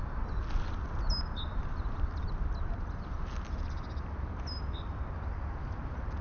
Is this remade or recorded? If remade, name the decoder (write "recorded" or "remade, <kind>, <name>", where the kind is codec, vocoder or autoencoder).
recorded